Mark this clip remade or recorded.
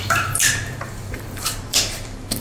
remade